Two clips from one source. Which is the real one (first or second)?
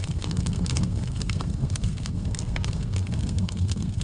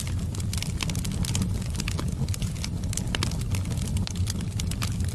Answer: second